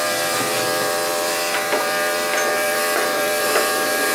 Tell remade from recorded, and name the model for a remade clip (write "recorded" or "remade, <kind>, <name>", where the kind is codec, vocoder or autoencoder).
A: remade, vocoder, BigVGAN v2